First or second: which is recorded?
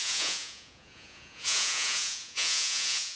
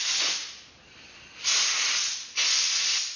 second